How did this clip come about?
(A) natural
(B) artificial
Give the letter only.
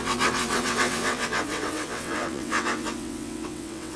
B